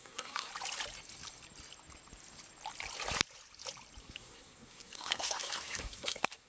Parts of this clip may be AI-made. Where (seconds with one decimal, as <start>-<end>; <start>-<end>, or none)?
0.0-0.5; 4.0-6.5